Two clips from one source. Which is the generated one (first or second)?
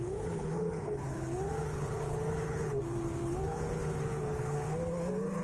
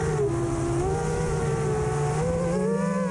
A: first